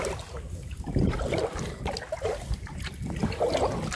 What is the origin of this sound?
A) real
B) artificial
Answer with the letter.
A